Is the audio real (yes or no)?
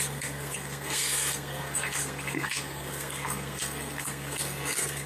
no